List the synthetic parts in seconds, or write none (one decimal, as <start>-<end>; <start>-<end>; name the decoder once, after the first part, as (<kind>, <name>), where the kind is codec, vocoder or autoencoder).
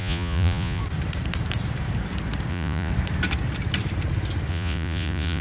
0.0-0.8 (vocoder, Vocos); 2.5-2.9; 4.5-5.4